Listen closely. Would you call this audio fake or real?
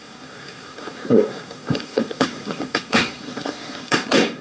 fake